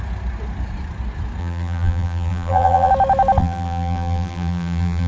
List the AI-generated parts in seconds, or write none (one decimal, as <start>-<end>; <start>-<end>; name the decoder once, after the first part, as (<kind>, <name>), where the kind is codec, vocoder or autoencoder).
1.4-2.9 (vocoder, BigVGAN v2); 3.4-5.1